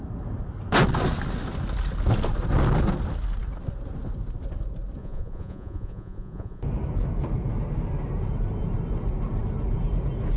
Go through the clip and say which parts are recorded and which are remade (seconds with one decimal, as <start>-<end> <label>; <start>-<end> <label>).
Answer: 0.0-5.0 recorded; 5.0-6.6 remade; 6.6-10.4 recorded